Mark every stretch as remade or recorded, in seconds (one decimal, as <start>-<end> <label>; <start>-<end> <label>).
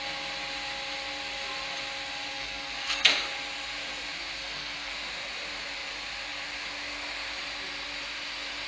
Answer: 0.0-2.3 recorded; 2.3-3.1 remade; 3.1-4.4 recorded; 4.4-4.9 remade; 4.9-8.7 recorded